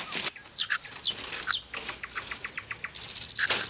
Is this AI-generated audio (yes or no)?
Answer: no